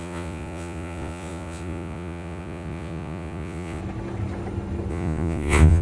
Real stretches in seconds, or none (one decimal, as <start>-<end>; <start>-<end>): 3.8-4.9